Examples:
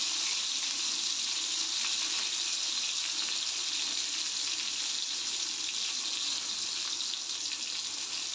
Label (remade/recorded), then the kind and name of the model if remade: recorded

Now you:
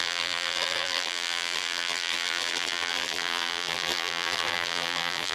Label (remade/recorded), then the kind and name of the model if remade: remade, vocoder, BigVGAN v2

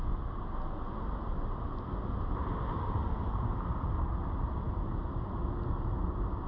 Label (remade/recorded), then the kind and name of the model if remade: recorded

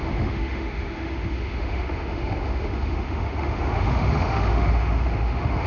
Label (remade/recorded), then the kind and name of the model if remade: remade, autoencoder, DAC-VAE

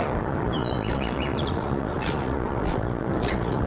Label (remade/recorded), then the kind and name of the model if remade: remade, vocoder, Vocos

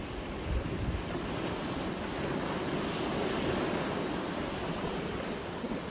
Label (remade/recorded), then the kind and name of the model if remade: remade, vocoder, BigVGAN v2